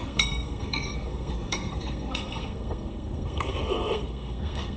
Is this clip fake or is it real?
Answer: fake